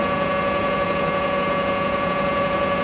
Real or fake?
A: fake